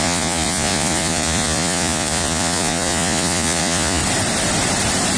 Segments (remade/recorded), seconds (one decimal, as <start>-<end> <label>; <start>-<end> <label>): 0.0-4.0 remade; 4.0-5.2 recorded

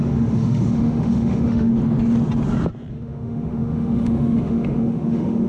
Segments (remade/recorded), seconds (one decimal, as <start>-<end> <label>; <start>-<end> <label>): 0.0-1.7 remade; 1.7-2.9 recorded; 2.9-5.5 remade